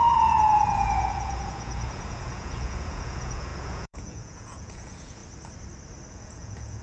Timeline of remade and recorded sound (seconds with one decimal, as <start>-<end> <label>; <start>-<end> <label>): 0.0-5.2 remade; 5.2-6.1 recorded; 6.1-6.8 remade